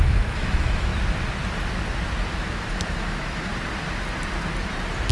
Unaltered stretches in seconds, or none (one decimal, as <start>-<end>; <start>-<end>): 0.9-2.3; 3.5-5.1